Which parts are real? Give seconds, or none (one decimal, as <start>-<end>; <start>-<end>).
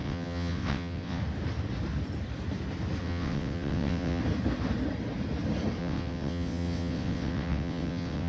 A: 1.2-3.0; 4.2-5.8